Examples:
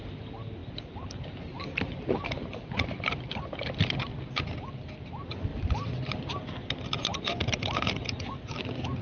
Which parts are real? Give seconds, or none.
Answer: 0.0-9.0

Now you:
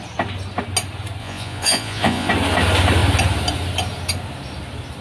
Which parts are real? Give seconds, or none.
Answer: 0.0-1.2; 2.3-5.0

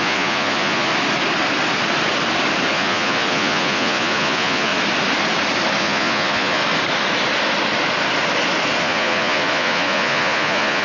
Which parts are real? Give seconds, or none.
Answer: 0.9-2.7; 4.7-5.8; 6.6-8.8

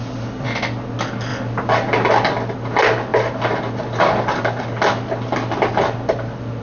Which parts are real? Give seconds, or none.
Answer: 0.0-6.6

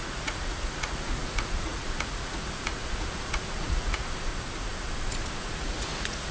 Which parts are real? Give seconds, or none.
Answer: 4.3-5.1

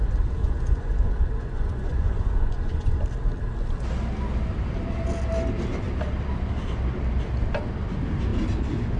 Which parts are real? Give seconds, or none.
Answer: 0.0-0.4; 2.9-9.0

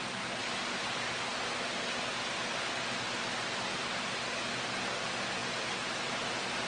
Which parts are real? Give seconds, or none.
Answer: 0.0-6.7

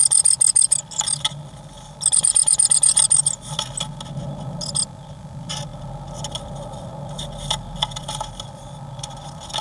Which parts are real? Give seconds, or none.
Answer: 0.0-9.6